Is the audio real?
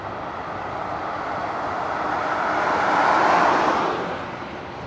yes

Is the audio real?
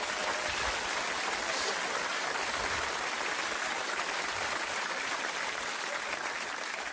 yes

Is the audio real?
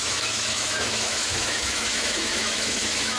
no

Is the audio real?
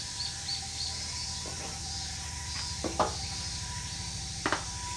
yes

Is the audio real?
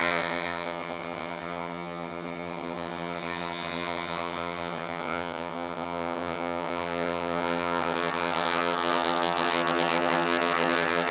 no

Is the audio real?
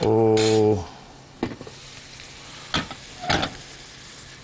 yes